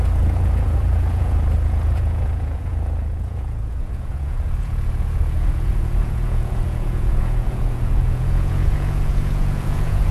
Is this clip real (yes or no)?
no